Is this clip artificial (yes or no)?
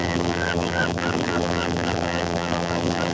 yes